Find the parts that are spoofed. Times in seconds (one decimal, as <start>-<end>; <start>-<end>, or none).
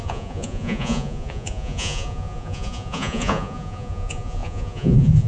0.0-5.3